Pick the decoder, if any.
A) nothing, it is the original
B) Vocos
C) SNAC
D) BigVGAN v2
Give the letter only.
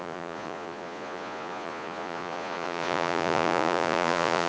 B